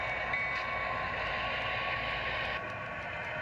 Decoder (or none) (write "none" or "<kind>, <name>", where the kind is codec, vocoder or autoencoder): none